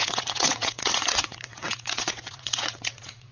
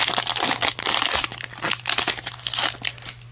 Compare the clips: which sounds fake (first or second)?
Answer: first